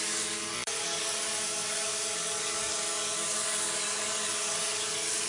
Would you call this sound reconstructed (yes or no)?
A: yes